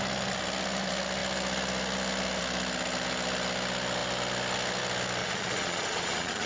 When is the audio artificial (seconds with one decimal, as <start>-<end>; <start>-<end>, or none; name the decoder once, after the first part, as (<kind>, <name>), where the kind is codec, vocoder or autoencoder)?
5.2-6.5 (vocoder, Vocos)